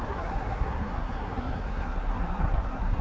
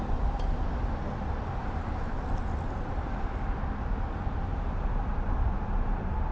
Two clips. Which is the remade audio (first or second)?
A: first